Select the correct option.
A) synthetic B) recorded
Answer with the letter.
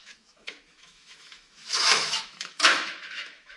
A